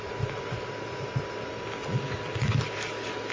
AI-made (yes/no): no